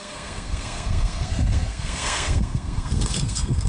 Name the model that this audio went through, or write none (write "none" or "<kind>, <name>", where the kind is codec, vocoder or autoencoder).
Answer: codec, SNAC